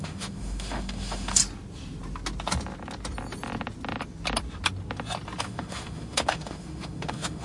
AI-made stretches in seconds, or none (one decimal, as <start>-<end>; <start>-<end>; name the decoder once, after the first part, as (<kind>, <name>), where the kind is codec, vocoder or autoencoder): 0.0-1.4 (autoencoder, DAC-VAE); 5.4-7.4